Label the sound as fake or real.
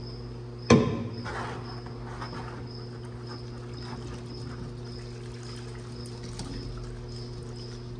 real